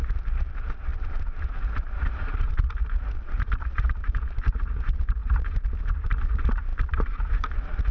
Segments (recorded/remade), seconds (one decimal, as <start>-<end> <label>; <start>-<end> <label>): 0.0-7.9 remade